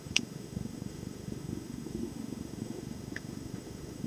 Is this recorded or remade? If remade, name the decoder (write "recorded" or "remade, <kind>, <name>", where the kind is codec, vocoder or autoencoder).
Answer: remade, autoencoder, DAC-VAE